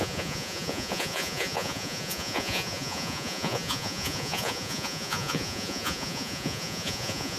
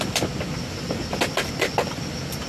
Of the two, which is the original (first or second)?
second